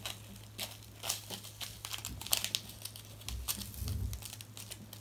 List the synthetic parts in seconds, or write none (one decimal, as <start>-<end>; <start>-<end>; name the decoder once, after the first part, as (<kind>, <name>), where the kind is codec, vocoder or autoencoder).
none